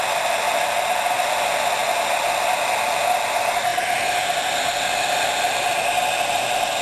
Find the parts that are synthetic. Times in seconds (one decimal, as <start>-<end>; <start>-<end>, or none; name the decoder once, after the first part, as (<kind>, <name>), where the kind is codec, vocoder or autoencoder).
none